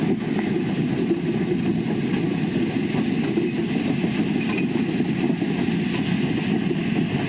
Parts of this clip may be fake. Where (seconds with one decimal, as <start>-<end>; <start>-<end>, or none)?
none